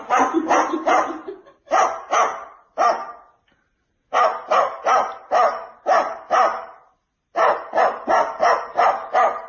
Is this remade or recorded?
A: recorded